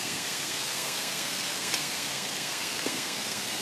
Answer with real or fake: fake